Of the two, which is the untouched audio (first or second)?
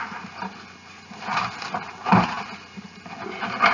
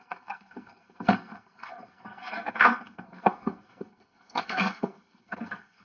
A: first